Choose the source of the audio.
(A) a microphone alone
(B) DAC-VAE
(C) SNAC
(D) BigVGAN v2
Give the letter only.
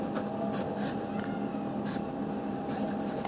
A